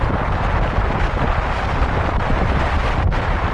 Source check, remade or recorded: remade